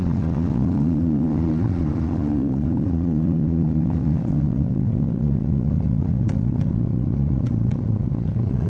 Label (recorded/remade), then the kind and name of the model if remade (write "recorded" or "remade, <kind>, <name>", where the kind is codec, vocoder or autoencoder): remade, vocoder, Vocos